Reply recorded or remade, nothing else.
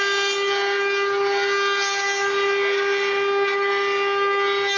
recorded